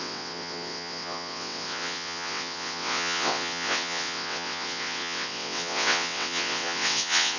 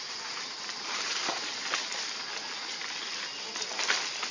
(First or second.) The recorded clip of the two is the second